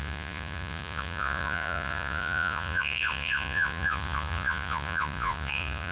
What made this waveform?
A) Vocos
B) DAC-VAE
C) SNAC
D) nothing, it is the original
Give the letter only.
A